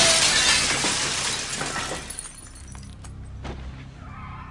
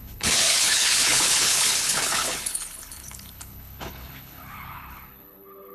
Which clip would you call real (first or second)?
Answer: first